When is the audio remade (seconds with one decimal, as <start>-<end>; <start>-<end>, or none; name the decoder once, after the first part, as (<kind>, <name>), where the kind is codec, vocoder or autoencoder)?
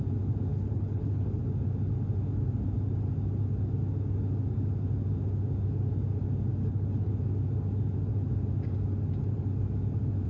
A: 0.5-1.4 (codec, HILCodec); 6.6-7.1